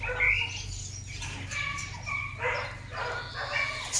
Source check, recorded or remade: recorded